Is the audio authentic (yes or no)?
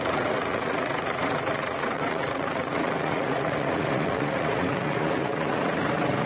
no